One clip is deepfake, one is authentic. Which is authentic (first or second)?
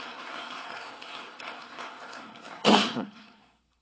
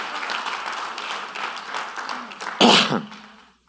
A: second